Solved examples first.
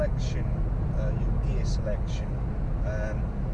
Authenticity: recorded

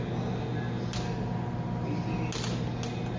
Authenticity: recorded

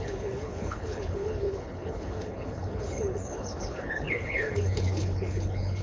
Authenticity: remade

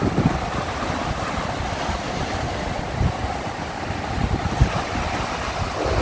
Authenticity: recorded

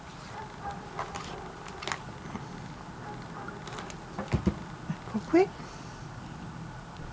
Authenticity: recorded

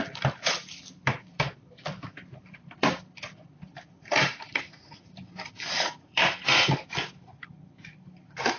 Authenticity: remade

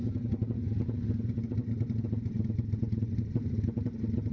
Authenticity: recorded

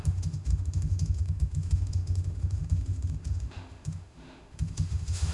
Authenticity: remade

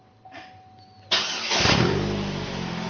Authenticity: recorded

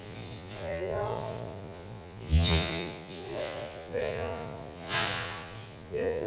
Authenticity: remade